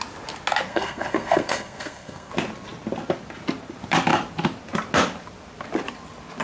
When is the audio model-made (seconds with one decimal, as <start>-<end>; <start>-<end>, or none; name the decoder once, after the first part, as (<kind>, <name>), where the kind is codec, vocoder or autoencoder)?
0.7-2.3 (codec, SNAC)